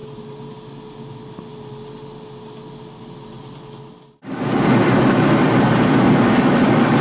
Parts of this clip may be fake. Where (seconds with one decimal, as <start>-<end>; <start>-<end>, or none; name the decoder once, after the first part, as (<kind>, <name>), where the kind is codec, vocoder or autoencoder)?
none